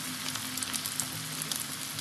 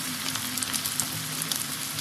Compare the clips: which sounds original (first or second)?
first